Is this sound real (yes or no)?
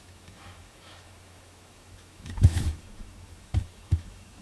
no